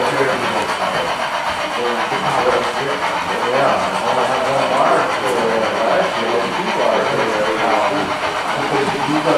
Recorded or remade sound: recorded